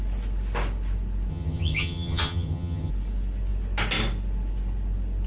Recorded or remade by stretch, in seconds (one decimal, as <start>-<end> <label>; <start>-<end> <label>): 0.0-1.3 recorded; 1.3-2.9 remade; 2.9-5.3 recorded